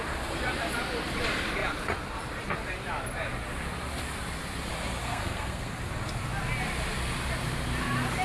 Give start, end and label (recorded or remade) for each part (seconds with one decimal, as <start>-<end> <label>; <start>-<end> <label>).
0.0-5.0 recorded; 5.0-5.7 remade; 5.7-8.2 recorded